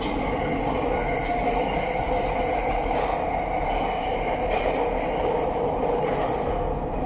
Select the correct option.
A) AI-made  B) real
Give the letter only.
B